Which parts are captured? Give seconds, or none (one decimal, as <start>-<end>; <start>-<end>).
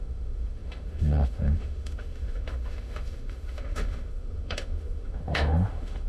none